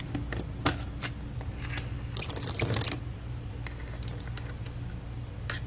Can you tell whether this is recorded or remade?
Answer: recorded